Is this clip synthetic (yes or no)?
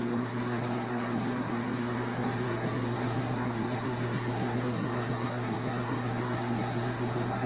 yes